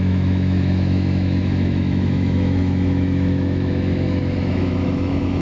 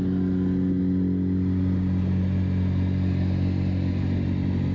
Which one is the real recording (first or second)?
second